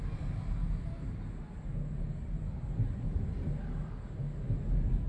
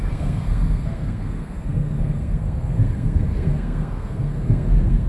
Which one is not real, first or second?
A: second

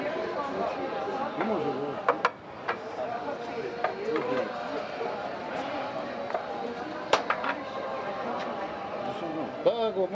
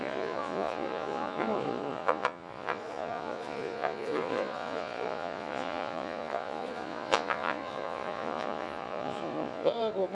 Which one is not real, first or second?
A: second